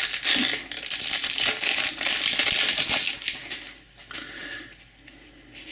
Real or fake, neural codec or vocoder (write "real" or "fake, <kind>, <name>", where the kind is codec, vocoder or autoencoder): real